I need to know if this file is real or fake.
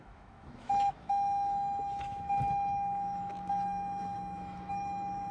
fake